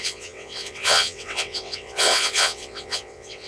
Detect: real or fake fake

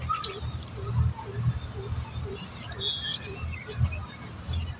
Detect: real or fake real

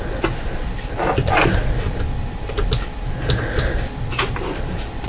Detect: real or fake real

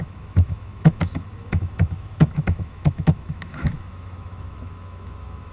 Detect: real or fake fake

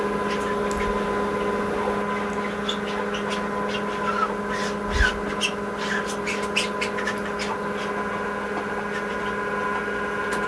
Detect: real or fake real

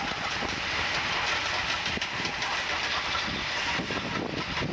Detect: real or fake real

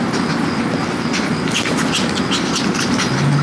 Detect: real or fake real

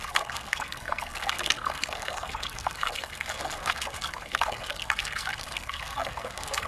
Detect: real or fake fake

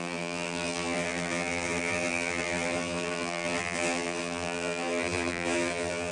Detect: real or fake fake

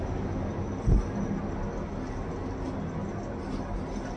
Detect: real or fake real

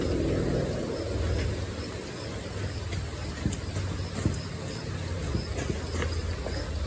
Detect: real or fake real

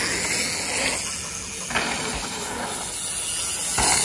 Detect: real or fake real